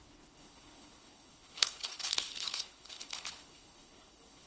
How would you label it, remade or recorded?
remade